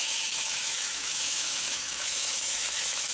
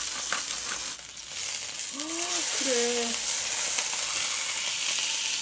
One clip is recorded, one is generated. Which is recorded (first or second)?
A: second